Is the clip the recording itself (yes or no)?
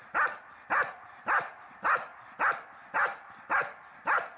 yes